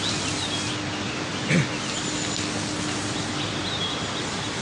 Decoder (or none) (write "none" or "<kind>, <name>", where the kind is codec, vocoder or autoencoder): none